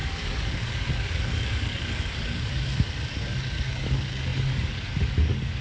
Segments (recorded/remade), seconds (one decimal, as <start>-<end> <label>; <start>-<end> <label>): 0.0-5.6 remade